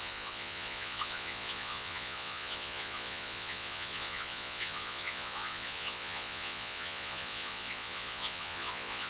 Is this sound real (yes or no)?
no